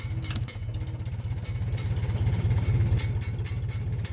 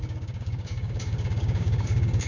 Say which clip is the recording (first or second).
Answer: first